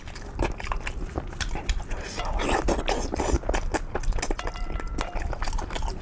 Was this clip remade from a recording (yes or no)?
no